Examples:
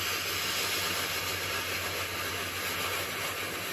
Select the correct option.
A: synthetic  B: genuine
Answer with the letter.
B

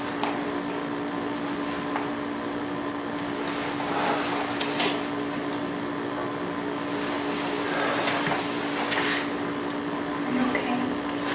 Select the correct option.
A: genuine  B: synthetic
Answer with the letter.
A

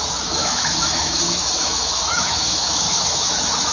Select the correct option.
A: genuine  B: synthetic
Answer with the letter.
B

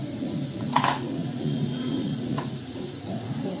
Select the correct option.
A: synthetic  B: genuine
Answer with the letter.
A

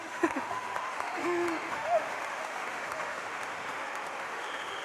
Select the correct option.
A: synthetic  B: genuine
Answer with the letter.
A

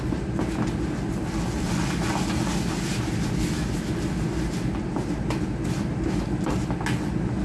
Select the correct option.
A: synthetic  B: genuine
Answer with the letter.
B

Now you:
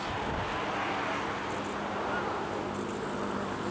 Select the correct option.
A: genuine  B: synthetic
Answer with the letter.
A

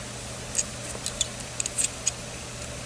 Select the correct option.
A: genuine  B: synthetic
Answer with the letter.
A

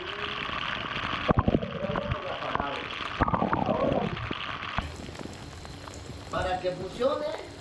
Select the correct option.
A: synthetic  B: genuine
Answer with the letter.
B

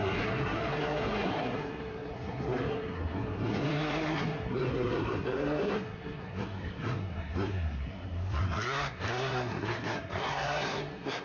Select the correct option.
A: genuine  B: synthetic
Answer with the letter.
B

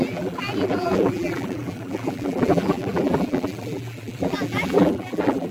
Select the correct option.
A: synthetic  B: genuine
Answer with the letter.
A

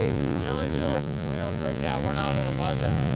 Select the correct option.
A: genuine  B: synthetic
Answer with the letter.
B